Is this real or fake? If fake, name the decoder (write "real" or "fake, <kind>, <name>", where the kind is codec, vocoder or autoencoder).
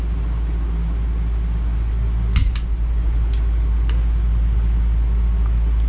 real